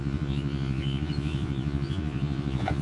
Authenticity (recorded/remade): remade